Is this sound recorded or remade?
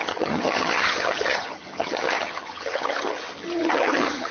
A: remade